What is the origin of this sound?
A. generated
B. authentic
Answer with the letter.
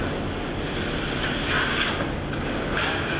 B